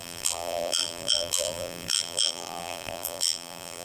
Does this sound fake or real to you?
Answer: fake